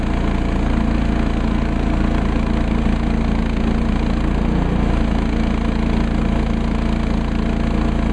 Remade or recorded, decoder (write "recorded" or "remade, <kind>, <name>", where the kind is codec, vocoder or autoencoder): recorded